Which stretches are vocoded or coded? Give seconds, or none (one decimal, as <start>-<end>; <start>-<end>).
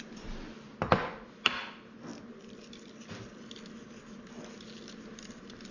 none